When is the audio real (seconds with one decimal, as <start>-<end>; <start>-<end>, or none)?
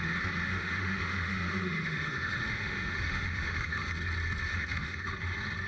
0.0-0.5; 3.9-4.5; 5.1-5.7